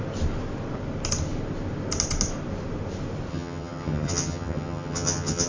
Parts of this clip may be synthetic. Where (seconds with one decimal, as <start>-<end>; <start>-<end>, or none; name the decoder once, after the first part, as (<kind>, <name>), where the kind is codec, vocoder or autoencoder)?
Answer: 3.3-5.5 (vocoder, HiFi-GAN)